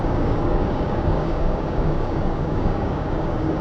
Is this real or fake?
fake